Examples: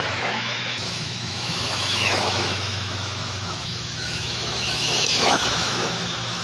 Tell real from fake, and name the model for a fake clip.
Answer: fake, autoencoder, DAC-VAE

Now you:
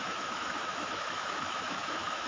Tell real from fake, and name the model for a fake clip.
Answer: fake, autoencoder, DAC-VAE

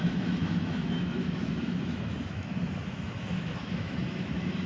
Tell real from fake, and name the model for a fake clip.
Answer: fake, autoencoder, DAC-VAE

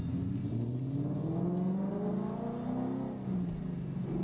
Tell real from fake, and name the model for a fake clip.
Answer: real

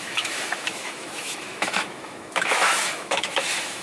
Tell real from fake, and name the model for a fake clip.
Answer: fake, autoencoder, DAC-VAE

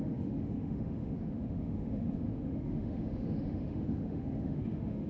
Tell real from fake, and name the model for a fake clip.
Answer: fake, autoencoder, DAC-VAE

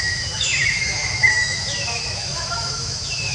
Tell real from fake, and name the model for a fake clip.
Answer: fake, autoencoder, DAC-VAE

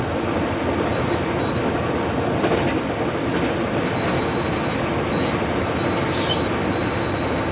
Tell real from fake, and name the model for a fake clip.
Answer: real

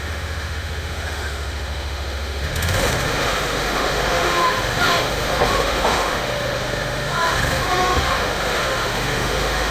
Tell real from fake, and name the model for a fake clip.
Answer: fake, autoencoder, DAC-VAE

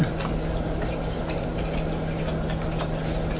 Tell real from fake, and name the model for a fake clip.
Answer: real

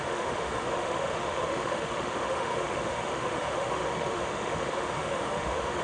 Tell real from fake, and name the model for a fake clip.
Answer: fake, autoencoder, DAC-VAE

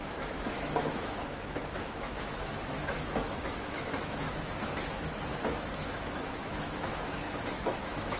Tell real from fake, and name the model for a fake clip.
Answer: fake, autoencoder, DAC-VAE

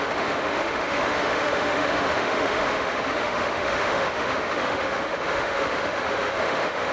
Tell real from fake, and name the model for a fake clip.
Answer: fake, autoencoder, DAC-VAE